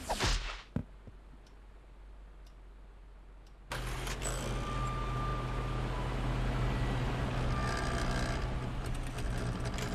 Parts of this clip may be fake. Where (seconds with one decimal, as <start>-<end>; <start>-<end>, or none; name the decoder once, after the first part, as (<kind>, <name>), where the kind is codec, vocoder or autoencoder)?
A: none